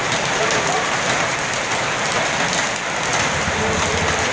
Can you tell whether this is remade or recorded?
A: remade